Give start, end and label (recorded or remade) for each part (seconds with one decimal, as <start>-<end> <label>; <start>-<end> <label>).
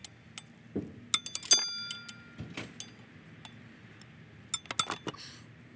0.0-5.8 recorded